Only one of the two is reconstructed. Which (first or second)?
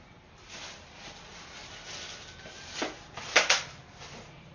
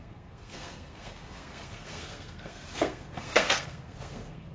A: second